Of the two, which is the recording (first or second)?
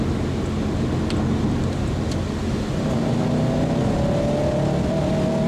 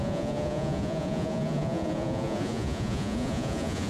first